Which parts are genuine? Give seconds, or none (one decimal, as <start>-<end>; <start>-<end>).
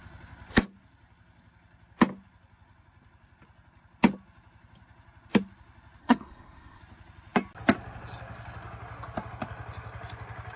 0.0-6.0; 6.8-10.6